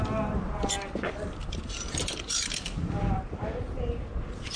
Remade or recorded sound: recorded